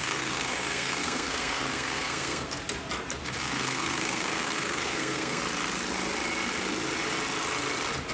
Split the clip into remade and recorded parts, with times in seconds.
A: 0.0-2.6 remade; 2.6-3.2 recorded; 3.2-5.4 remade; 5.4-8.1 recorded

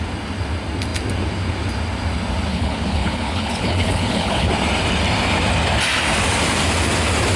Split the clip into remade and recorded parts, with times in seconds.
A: 0.0-2.5 recorded; 2.5-4.5 remade; 4.5-7.4 recorded

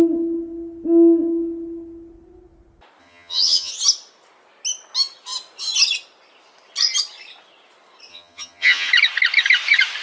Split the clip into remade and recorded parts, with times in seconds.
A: 0.0-3.0 recorded; 3.0-3.7 remade; 3.7-8.1 recorded; 8.1-8.9 remade; 8.9-10.0 recorded

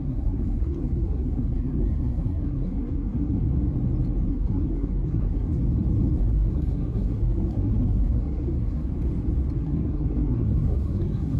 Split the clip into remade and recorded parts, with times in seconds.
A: 0.0-3.5 remade; 3.5-4.3 recorded; 4.3-5.5 remade; 5.5-6.2 recorded; 6.2-8.9 remade; 8.9-9.6 recorded; 9.6-11.4 remade

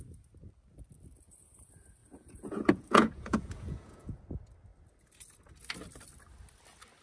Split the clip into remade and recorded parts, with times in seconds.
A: 0.0-2.0 recorded; 2.0-4.2 remade; 4.2-7.0 recorded

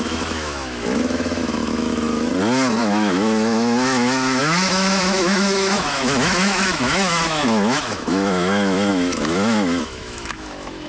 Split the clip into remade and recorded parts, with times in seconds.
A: 0.0-2.3 remade; 2.3-2.8 recorded; 2.8-10.9 remade

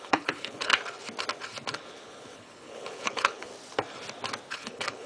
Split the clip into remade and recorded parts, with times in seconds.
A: 0.0-0.7 remade; 0.7-1.7 recorded; 1.7-3.5 remade; 3.5-4.5 recorded; 4.5-5.1 remade